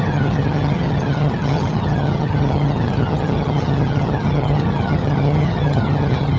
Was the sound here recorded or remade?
remade